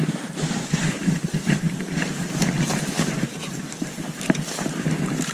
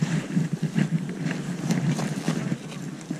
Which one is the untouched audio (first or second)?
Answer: second